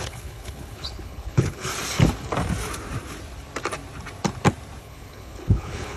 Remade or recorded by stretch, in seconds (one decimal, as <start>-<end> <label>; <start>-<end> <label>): 0.0-1.7 remade; 1.7-4.8 recorded; 4.8-6.0 remade